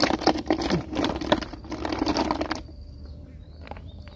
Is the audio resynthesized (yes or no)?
no